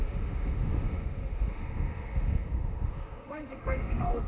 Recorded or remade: remade